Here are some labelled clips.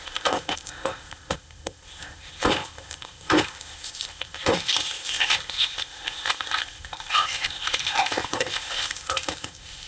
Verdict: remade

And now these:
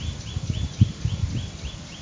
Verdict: recorded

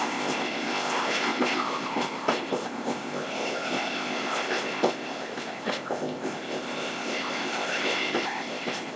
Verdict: remade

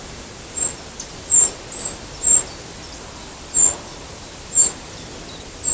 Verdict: recorded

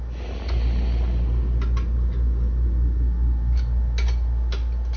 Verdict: recorded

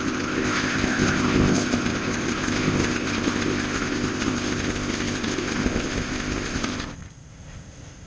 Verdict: remade